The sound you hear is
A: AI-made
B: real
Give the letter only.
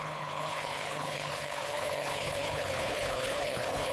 A